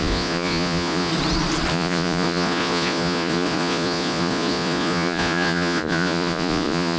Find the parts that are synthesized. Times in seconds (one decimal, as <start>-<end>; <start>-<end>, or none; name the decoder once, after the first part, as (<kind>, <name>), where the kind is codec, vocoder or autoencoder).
0.0-1.1 (vocoder, Vocos); 1.7-7.0